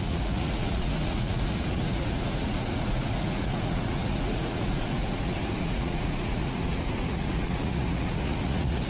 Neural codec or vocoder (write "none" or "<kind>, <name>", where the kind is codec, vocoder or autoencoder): vocoder, Vocos